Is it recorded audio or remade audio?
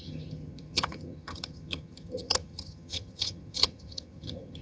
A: remade